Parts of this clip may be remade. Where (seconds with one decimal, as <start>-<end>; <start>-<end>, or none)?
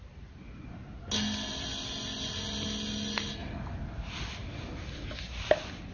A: none